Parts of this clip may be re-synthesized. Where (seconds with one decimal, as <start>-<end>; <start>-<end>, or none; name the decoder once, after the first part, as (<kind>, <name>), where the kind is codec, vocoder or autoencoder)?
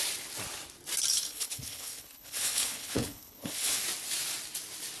1.1-3.8 (codec, HILCodec)